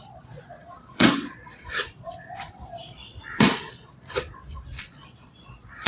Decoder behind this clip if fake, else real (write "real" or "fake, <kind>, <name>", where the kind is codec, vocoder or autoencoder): fake, vocoder, Vocos